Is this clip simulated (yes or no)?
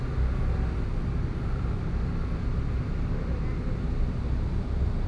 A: no